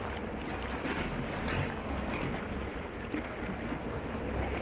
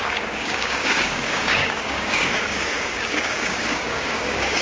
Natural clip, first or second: first